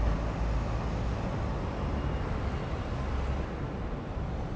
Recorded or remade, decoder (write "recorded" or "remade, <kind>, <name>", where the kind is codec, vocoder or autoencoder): recorded